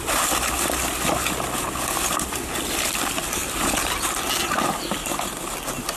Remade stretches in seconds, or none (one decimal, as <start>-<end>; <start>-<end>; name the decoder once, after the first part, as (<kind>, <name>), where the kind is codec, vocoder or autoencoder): none